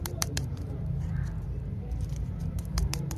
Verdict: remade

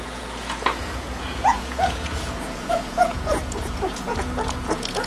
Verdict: remade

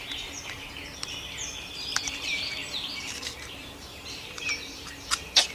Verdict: remade